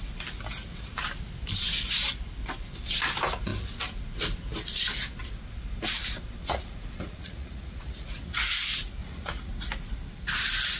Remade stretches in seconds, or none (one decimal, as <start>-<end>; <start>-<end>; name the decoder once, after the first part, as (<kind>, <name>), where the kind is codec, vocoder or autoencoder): 6.4-8.5 (vocoder, Vocos); 9.0-9.5